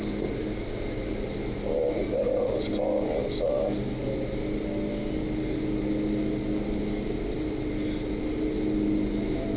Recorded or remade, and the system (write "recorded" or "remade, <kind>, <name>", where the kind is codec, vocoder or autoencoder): recorded